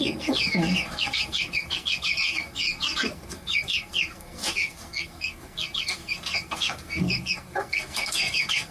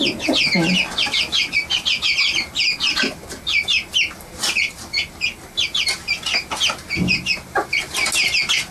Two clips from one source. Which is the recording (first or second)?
second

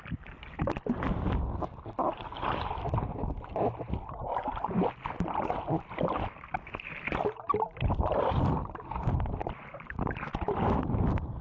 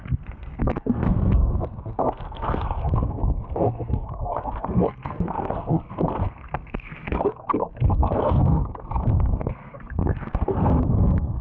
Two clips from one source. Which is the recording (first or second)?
first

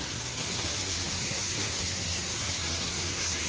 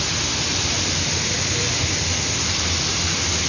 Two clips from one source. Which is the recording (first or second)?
second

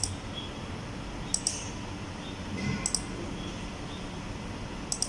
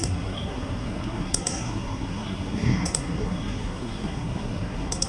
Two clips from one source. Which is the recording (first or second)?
first